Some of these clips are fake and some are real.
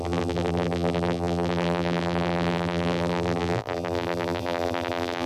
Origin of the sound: fake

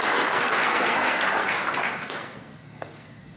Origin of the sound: fake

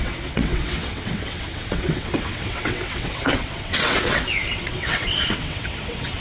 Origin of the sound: fake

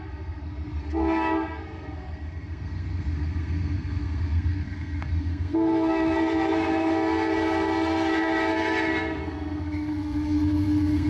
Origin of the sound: fake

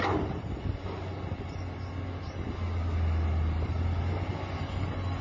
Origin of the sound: real